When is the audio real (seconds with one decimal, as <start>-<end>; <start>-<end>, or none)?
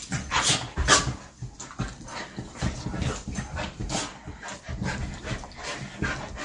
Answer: 0.0-6.4